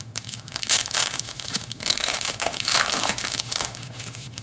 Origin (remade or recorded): remade